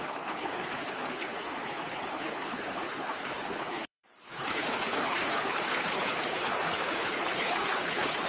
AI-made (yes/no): yes